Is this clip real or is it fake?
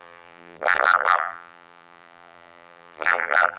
fake